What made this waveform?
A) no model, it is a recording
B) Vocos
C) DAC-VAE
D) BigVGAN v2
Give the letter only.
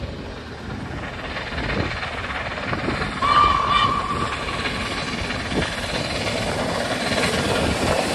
A